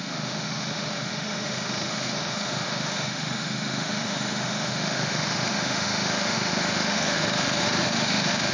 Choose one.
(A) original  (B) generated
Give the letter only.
B